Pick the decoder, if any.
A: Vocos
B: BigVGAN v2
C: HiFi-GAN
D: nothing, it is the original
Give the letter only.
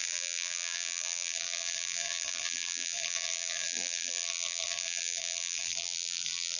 B